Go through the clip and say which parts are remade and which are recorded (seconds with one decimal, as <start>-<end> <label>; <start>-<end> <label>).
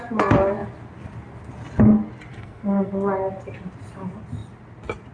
0.0-2.3 recorded; 2.3-2.9 remade; 2.9-5.1 recorded